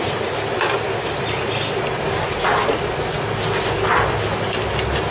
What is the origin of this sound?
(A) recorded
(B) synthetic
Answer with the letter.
A